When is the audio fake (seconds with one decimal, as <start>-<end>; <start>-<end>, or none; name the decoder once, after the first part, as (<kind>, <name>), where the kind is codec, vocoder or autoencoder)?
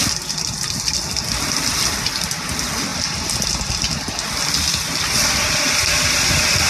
none